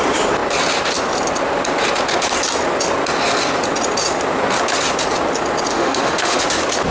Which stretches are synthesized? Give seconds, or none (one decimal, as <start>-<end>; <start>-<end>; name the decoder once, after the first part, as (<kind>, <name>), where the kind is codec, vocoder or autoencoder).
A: 5.7-6.4 (autoencoder, DAC-VAE)